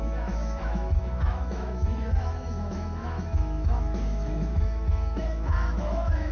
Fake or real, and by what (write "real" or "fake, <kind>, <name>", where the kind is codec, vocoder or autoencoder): fake, autoencoder, DAC-VAE